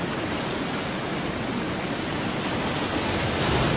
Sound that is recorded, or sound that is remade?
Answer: recorded